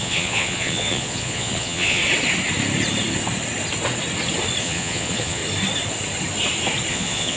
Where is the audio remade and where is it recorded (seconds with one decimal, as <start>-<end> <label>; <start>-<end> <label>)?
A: 0.0-2.0 remade; 2.0-4.6 recorded; 4.6-5.4 remade; 5.4-6.9 recorded; 6.9-7.4 remade